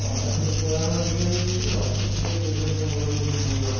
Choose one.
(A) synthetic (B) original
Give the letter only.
B